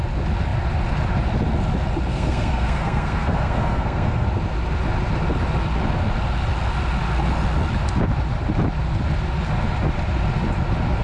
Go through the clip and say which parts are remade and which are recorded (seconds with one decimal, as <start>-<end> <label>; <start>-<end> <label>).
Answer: 0.0-2.1 recorded; 2.1-4.3 remade; 4.3-11.0 recorded